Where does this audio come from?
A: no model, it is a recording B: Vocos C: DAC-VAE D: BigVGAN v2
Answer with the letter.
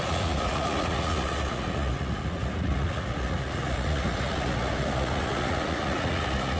B